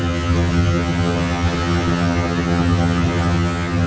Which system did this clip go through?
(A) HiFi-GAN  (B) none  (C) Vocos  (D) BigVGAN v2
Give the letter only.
A